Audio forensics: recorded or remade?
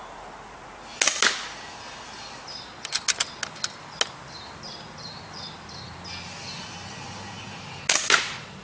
recorded